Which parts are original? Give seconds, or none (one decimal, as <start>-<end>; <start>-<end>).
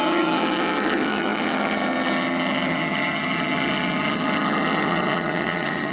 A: none